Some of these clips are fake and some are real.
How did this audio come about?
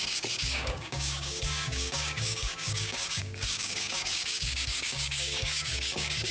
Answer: fake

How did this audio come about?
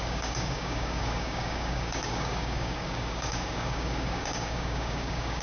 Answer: fake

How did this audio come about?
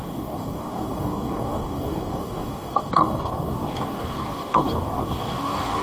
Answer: fake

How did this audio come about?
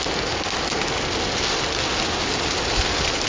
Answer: real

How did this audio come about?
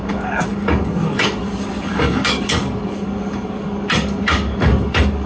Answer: fake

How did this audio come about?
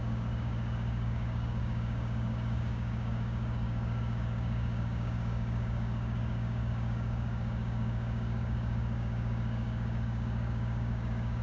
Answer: fake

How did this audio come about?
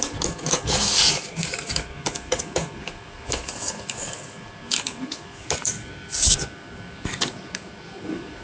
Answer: fake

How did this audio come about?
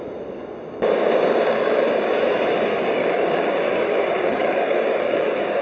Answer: fake